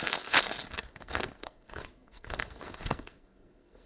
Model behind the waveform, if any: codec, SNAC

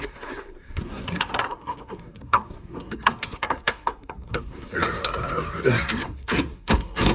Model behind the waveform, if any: codec, SNAC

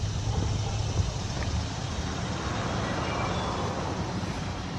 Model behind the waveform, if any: none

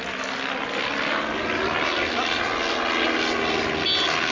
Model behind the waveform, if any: none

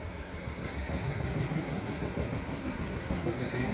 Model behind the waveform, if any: codec, SNAC